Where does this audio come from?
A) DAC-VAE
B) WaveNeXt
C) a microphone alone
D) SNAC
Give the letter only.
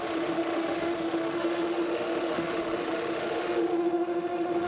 A